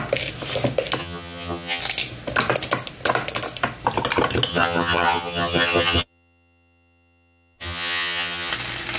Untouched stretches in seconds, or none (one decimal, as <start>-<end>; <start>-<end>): 0.0-1.0; 1.8-4.5; 8.5-9.0